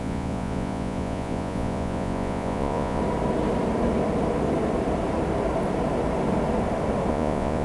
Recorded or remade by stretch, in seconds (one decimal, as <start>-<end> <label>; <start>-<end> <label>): 0.0-3.0 remade; 3.0-7.1 recorded; 7.1-7.6 remade